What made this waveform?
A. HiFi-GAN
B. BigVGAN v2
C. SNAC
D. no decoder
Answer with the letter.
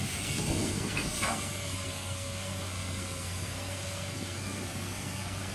C